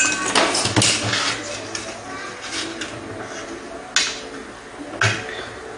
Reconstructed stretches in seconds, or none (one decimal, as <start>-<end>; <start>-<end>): none